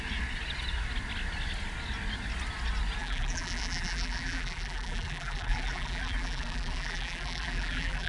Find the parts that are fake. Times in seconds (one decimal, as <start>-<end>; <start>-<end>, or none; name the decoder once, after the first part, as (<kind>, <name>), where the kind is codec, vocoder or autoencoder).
3.0-8.1 (vocoder, BigVGAN v2)